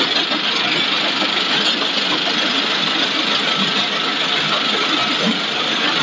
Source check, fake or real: real